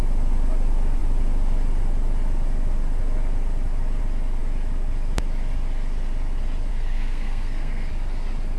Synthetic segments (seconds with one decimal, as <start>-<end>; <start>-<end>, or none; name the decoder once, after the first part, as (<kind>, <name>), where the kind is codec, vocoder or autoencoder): 6.7-7.9 (codec, SNAC)